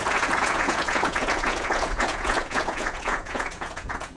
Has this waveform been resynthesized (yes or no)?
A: yes